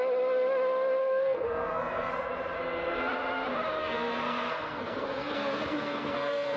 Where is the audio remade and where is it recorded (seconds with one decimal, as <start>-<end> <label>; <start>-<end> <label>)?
0.0-1.0 recorded; 1.0-2.1 remade; 2.1-3.8 recorded; 3.8-6.6 remade